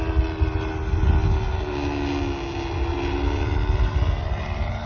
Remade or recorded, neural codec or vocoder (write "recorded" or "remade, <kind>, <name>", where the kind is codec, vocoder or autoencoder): recorded